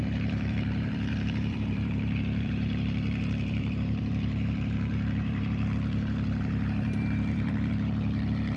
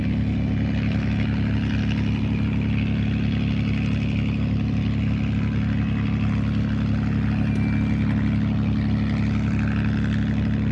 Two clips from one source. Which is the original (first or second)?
second